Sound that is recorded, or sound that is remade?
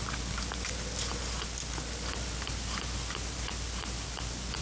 recorded